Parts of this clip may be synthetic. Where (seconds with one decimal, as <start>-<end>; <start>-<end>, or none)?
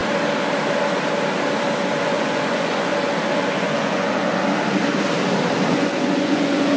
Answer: 2.0-2.9; 3.5-4.3; 5.7-6.8